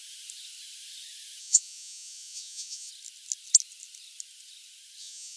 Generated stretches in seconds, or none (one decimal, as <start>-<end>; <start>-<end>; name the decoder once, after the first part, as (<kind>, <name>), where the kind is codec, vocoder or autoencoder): 1.4-2.9 (vocoder, Vocos); 5.0-5.4